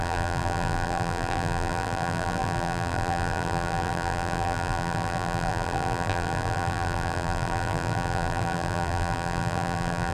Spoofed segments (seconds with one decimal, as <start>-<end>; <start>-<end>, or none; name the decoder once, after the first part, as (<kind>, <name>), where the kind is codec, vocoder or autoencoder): 0.0-10.1 (vocoder, BigVGAN v2)